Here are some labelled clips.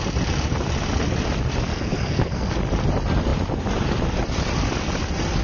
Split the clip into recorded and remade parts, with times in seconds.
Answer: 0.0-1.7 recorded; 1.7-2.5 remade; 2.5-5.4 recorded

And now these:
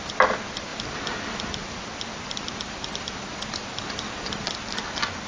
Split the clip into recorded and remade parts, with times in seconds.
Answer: 0.0-5.3 recorded

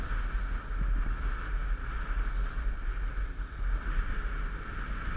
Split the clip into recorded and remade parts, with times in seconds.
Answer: 0.0-5.2 recorded

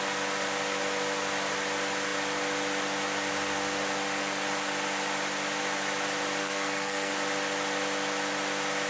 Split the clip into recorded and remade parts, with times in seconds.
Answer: 0.0-6.4 recorded; 6.4-7.1 remade; 7.1-8.9 recorded

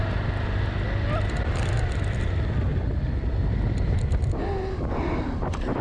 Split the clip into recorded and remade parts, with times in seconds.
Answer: 0.0-5.8 recorded